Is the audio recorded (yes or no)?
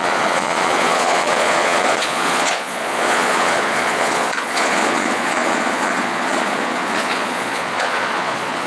no